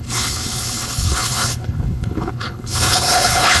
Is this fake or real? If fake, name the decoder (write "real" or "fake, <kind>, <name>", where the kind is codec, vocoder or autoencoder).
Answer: fake, codec, HILCodec